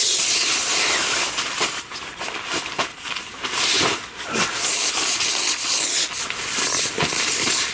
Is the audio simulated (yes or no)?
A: no